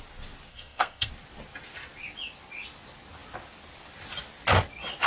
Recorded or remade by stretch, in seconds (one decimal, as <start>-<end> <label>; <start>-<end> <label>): 0.0-0.5 recorded; 0.5-1.1 remade; 1.1-5.1 recorded